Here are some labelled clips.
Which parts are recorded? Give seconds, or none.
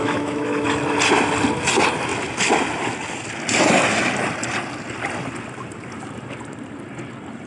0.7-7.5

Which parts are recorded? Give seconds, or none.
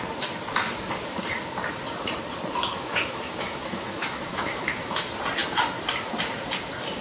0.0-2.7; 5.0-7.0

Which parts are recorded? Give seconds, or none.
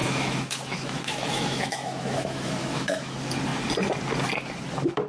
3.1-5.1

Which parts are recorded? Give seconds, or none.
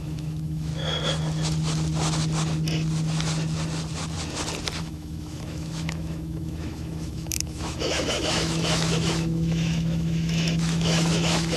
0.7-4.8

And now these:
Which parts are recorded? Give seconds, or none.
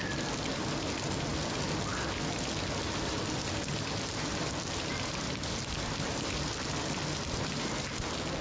0.0-8.4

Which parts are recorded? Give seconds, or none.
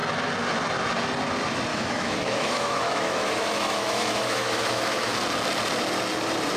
0.0-1.7; 5.1-6.6